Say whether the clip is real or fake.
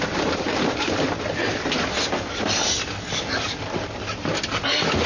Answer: real